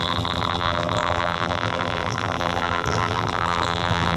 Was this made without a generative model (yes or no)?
no